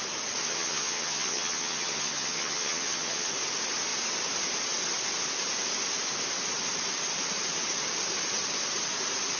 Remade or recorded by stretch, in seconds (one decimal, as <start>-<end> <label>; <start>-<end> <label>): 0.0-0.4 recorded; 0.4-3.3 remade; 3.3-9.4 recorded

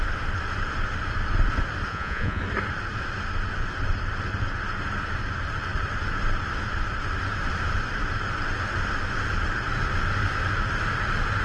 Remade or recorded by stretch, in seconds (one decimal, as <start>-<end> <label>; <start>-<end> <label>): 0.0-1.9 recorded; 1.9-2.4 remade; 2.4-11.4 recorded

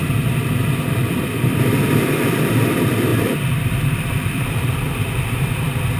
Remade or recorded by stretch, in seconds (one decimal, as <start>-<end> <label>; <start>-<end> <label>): 0.0-0.9 recorded; 0.9-6.0 remade